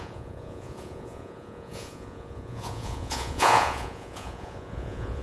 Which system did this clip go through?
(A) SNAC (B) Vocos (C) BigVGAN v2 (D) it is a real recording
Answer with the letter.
B